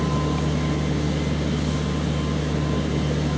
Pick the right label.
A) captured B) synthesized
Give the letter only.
A